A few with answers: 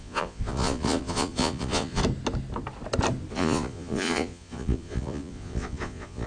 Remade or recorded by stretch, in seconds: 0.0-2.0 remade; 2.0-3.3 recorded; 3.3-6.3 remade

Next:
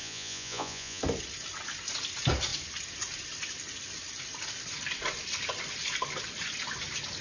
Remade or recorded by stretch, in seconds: 0.0-1.0 remade; 1.0-7.2 recorded

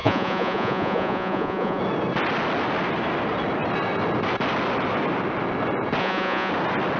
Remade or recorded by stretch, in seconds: 0.0-1.8 remade; 1.8-6.0 recorded; 6.0-6.5 remade; 6.5-7.0 recorded